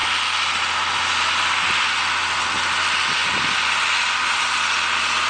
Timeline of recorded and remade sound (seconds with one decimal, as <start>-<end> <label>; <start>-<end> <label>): 0.0-5.3 recorded